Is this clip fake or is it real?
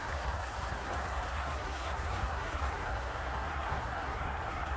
fake